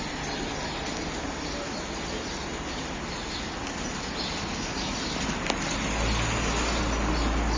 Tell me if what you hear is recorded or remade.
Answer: recorded